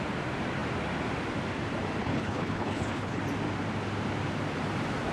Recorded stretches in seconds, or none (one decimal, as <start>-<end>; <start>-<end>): 0.0-2.0; 3.2-5.1

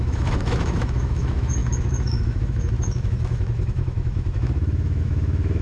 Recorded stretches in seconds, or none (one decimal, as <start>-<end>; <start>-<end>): none

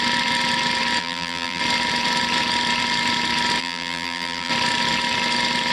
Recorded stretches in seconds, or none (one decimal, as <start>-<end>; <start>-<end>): 0.0-1.0; 1.6-3.6; 4.5-5.7

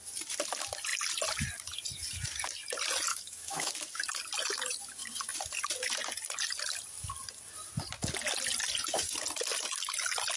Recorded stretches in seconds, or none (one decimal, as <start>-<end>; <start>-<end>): 0.0-3.1; 3.7-10.4